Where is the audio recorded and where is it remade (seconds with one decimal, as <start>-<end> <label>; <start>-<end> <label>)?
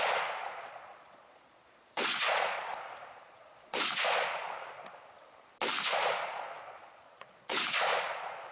0.0-0.4 recorded; 0.4-2.6 remade; 2.6-3.2 recorded; 3.2-4.5 remade; 4.5-6.0 recorded; 6.0-8.5 remade